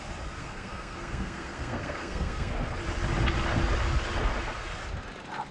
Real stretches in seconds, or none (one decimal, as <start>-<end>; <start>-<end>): 0.0-0.4; 2.5-5.5